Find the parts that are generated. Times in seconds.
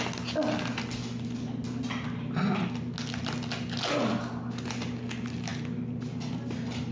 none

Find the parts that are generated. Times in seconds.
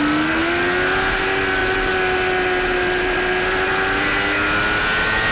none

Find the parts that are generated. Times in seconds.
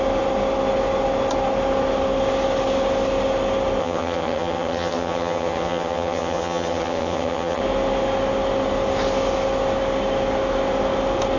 3.8-7.6 (vocoder, HiFi-GAN)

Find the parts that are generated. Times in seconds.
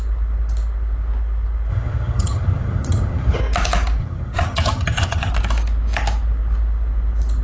1.7-3.4 (vocoder, HiFi-GAN); 4.0-5.3